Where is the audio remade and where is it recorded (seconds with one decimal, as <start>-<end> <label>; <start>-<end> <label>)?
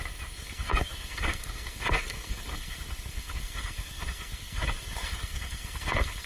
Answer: 0.0-6.3 remade